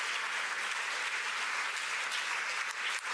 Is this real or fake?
real